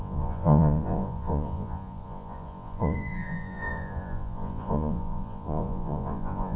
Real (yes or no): no